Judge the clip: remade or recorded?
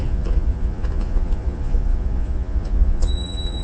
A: remade